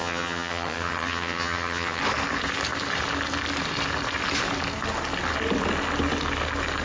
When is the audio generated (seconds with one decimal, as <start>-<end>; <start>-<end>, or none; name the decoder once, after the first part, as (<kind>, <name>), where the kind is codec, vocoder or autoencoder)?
0.0-2.0 (vocoder, HiFi-GAN)